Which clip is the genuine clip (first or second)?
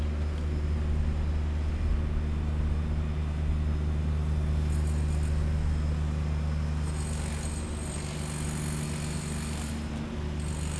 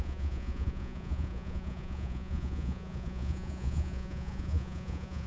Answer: first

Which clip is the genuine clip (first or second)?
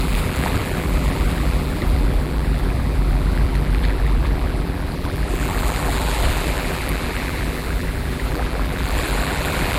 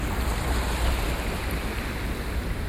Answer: second